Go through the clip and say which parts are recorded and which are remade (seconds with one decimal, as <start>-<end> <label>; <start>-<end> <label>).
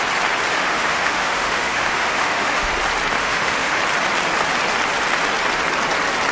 0.0-0.5 recorded; 0.5-2.7 remade; 2.7-3.2 recorded; 3.2-3.8 remade; 3.8-6.3 recorded